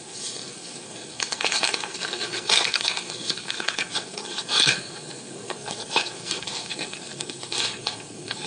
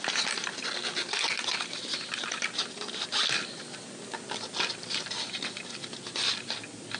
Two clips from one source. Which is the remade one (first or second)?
first